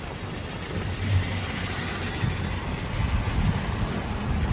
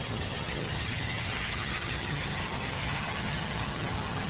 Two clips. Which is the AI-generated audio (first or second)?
second